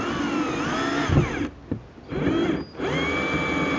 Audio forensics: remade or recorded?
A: recorded